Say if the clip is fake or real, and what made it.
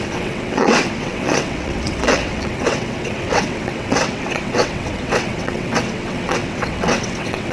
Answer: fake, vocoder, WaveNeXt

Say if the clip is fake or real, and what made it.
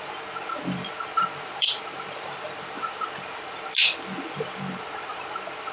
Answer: fake, vocoder, BigVGAN v2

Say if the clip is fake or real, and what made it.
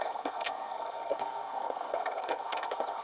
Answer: fake, codec, SNAC